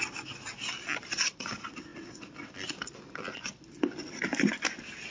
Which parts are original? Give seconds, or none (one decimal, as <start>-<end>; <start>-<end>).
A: 0.0-5.1